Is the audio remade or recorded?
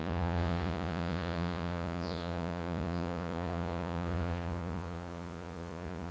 remade